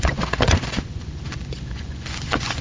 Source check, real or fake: fake